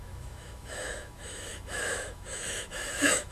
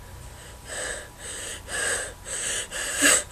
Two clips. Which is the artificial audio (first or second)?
first